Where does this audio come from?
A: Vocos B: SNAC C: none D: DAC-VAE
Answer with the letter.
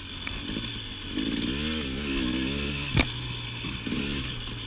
C